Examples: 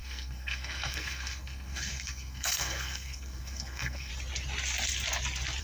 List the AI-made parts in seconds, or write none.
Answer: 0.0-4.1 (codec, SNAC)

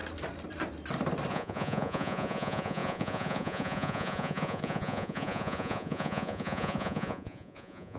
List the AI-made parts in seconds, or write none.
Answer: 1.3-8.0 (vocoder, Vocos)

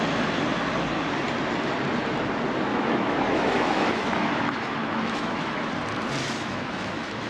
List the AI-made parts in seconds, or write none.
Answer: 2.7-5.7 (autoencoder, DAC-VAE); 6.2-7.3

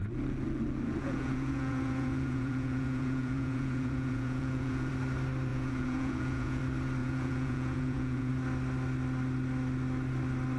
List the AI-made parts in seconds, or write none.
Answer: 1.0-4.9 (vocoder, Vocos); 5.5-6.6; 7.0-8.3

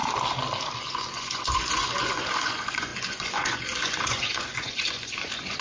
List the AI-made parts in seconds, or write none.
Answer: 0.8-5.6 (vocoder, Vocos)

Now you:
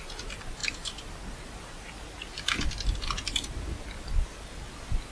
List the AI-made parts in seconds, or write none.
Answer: none

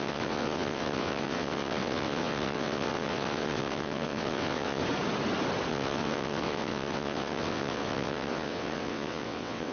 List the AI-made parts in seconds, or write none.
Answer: 0.0-4.8 (vocoder, WaveNeXt); 5.7-9.7